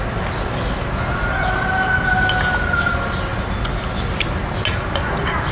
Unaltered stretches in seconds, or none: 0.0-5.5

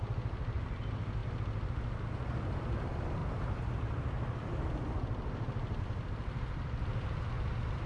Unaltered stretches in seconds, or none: 1.2-2.6; 3.2-5.8

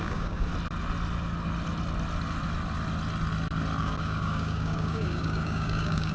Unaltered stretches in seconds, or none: 0.5-3.8

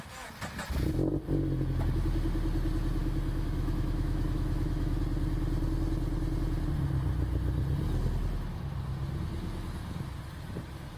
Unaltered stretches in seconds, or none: 0.0-3.0; 5.0-11.0

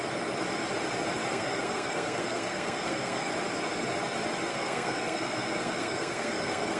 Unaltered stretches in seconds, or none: 0.0-1.3; 3.3-4.5

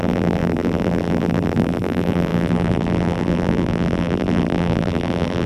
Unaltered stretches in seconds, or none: none